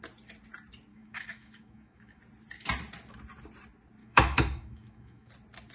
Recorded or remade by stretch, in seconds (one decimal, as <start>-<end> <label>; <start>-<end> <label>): 0.0-0.9 recorded; 0.9-2.2 remade; 2.2-4.0 recorded; 4.0-5.3 remade; 5.3-5.7 recorded